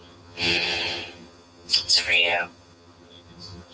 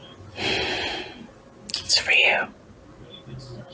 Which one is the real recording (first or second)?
second